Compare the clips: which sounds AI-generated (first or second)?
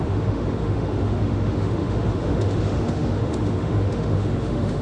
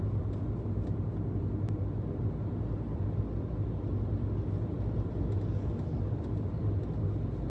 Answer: first